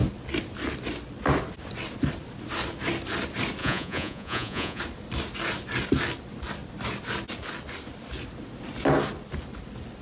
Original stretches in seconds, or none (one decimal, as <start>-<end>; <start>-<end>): 0.0-3.6; 4.8-10.0

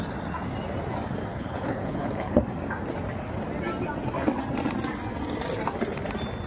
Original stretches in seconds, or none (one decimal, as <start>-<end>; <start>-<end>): 0.0-1.3; 2.4-6.5

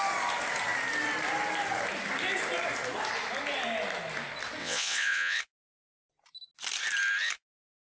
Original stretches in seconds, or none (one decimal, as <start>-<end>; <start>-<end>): 0.0-4.6; 5.4-7.9

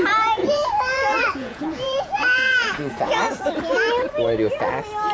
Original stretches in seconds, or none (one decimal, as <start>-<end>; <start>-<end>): 0.0-0.4; 3.5-5.1

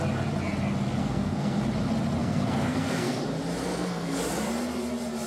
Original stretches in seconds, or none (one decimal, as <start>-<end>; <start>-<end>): 0.0-1.0; 1.6-2.2; 3.2-3.6; 4.2-5.3

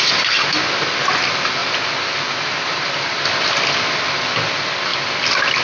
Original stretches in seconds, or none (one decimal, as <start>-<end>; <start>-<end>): 0.0-5.6